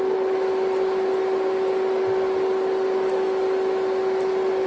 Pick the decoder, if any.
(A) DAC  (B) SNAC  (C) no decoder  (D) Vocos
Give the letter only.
C